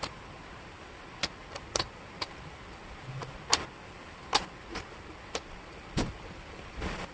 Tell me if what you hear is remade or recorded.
recorded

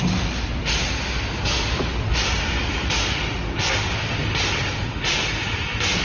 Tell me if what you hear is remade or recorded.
recorded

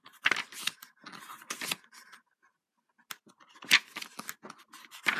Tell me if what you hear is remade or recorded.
recorded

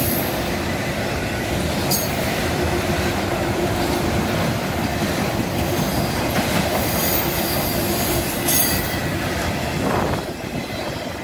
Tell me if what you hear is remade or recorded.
remade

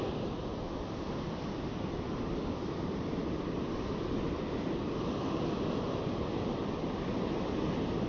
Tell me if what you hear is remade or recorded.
recorded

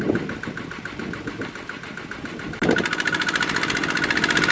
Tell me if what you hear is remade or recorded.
recorded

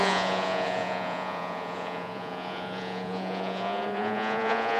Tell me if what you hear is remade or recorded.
remade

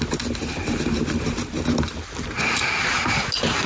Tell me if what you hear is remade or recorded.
recorded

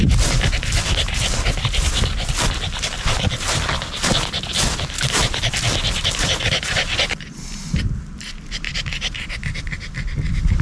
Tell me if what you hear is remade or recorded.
recorded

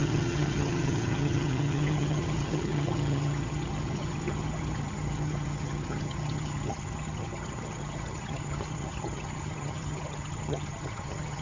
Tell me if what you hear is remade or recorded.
remade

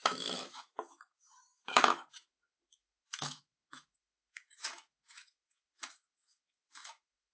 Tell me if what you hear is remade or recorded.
remade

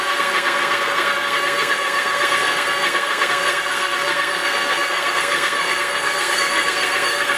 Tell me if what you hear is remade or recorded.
remade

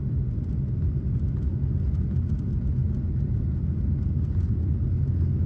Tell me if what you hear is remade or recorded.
recorded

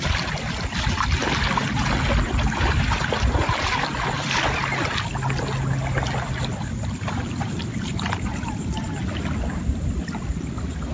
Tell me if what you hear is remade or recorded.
recorded